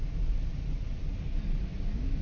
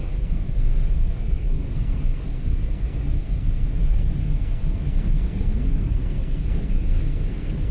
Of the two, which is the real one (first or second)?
first